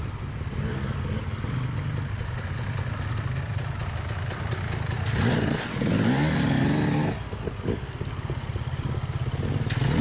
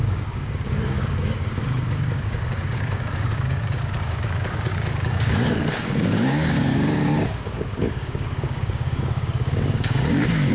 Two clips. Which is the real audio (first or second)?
first